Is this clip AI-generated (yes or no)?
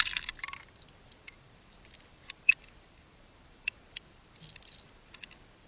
yes